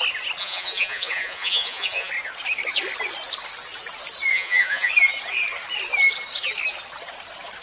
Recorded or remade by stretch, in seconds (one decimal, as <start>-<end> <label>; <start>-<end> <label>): 0.0-0.4 recorded; 0.4-2.1 remade; 2.1-4.3 recorded; 4.3-4.9 remade; 4.9-7.6 recorded